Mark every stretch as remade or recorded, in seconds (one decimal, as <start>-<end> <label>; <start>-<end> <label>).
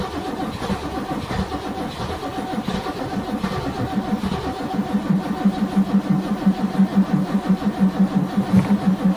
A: 0.0-9.2 recorded